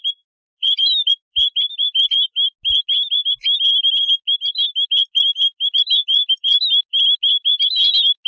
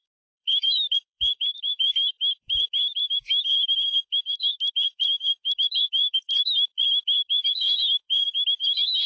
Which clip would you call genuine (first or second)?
first